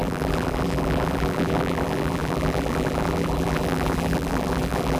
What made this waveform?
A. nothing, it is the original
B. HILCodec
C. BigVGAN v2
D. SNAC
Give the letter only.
C